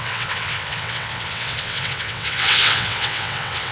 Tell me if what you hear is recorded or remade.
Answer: remade